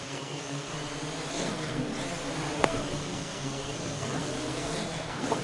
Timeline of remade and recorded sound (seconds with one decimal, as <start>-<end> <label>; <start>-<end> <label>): 0.0-0.7 remade; 0.7-1.3 recorded; 1.3-1.9 remade; 1.9-2.6 recorded; 2.6-5.4 remade